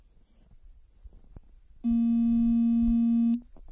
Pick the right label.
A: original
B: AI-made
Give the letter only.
A